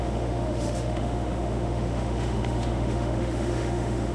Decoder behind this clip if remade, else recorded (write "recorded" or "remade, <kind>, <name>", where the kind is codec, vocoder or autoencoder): remade, autoencoder, DAC-VAE